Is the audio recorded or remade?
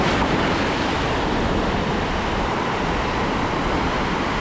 recorded